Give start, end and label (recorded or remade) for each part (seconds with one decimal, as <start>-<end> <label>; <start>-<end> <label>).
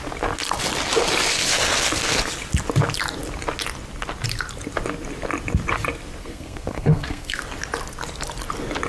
0.0-6.2 recorded; 6.2-7.4 remade; 7.4-8.9 recorded